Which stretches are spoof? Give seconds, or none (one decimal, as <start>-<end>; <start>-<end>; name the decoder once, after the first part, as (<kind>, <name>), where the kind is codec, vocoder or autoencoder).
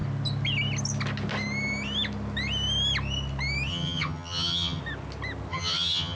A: 3.7-4.8 (vocoder, HiFi-GAN); 5.5-6.1